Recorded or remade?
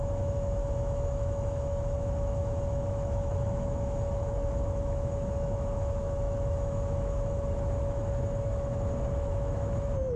remade